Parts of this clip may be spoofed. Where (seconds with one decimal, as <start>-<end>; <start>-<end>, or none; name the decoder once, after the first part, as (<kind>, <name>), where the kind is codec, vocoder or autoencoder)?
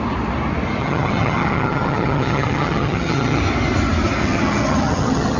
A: 0.8-3.4 (vocoder, HiFi-GAN); 4.2-5.4